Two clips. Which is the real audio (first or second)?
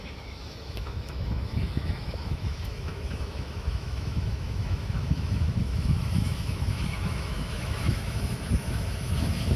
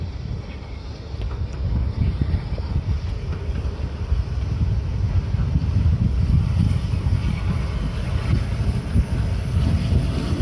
second